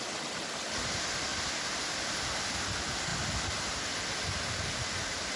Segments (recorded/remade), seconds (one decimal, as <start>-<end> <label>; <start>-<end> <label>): 0.0-5.4 recorded